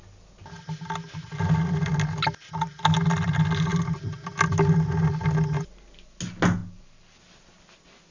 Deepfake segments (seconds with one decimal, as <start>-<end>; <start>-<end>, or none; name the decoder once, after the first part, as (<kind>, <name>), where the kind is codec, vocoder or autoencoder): 6.6-7.2 (vocoder, BigVGAN v2)

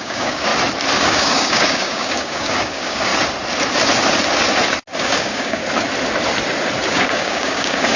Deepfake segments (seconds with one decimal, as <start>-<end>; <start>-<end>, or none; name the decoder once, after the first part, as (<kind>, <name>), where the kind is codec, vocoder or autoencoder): 0.0-0.5 (codec, DAC); 1.0-3.1; 5.0-5.6; 6.9-8.0

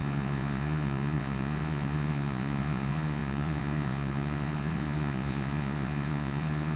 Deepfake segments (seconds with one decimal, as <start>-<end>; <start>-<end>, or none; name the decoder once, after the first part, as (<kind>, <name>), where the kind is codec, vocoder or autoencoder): 0.0-6.8 (vocoder, Vocos)

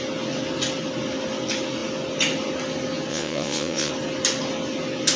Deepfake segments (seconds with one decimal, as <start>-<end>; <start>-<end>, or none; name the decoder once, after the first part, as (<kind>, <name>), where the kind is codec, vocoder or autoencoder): 3.1-3.9 (vocoder, WaveNeXt)

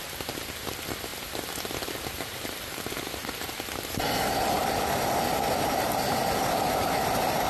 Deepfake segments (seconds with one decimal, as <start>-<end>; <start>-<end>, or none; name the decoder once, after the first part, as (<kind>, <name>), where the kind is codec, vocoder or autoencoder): none

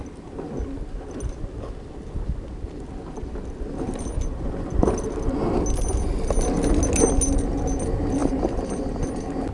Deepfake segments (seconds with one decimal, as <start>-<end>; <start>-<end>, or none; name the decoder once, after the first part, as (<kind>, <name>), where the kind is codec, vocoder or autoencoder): none

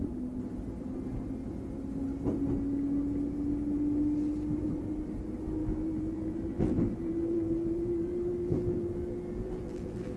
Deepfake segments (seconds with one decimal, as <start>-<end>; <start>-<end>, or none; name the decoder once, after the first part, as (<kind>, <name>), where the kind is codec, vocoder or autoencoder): 5.6-10.2 (vocoder, BigVGAN v2)